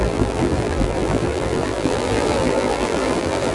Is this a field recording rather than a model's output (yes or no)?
no